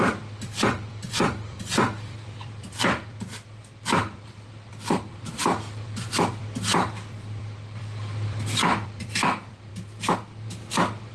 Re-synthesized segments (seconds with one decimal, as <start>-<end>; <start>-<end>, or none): 0.0-9.7

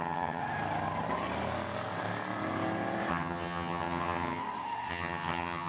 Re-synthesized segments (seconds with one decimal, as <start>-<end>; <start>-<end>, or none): 0.0-0.4; 3.1-4.4; 4.9-5.7

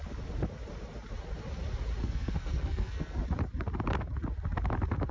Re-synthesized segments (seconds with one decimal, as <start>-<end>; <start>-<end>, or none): 2.0-3.2

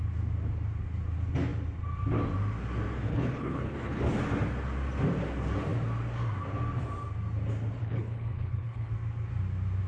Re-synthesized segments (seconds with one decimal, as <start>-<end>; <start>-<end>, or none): 3.1-4.0; 7.8-8.9

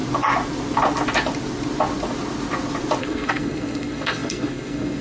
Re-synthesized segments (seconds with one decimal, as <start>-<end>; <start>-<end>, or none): 3.0-5.0

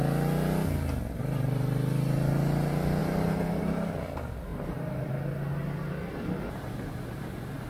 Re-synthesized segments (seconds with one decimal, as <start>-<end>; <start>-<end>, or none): 3.0-3.6; 4.5-5.1

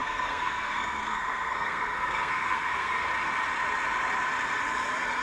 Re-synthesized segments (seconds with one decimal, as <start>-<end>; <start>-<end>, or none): 0.0-3.1

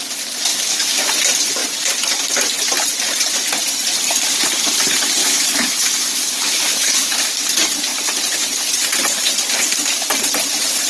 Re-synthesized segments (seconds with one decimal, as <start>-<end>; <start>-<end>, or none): 0.5-1.1; 5.2-7.3